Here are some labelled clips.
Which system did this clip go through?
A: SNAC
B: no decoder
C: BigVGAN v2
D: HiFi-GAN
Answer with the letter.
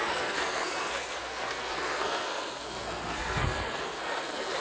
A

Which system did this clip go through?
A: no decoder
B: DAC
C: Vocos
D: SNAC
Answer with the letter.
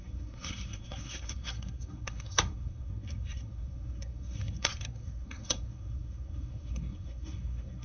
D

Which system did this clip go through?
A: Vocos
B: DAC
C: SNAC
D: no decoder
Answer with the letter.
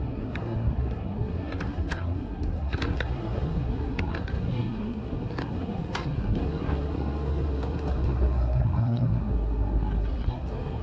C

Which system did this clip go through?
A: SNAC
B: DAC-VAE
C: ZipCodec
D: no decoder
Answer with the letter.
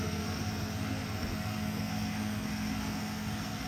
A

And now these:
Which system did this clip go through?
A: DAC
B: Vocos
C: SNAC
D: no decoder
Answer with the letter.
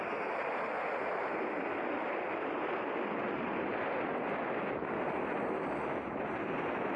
D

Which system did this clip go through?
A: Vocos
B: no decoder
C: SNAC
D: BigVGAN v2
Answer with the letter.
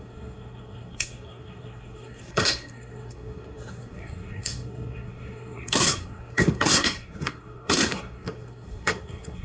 C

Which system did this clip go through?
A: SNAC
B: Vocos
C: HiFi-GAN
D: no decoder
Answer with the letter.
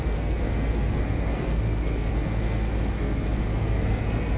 A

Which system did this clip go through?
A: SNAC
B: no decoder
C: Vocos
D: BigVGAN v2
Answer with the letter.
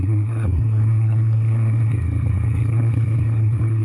A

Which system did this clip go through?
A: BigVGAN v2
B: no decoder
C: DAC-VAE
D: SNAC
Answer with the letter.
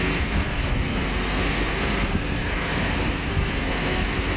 D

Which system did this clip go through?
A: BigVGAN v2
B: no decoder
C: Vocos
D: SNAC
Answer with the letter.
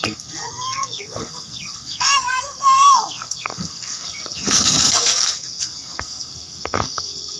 D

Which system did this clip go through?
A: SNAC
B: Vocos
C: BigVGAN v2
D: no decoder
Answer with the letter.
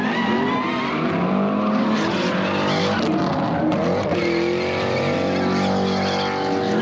D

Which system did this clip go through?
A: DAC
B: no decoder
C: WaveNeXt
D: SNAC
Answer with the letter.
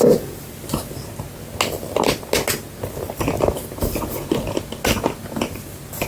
B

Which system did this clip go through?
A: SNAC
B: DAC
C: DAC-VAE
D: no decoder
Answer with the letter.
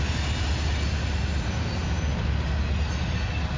D